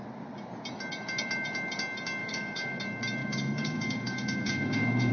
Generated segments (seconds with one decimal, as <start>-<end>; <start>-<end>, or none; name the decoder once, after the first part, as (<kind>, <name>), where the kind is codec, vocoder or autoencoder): 2.2-2.8 (codec, DAC); 3.2-5.1